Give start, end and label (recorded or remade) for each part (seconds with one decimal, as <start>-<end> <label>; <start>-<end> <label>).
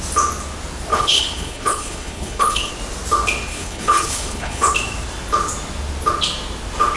0.0-0.9 recorded; 0.9-2.7 remade; 2.7-3.5 recorded; 3.5-4.7 remade; 4.7-7.0 recorded